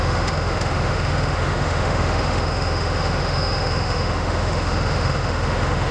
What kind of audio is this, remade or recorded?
remade